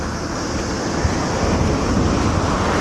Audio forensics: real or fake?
real